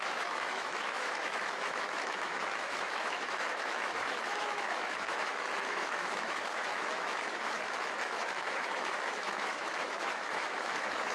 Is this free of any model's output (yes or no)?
no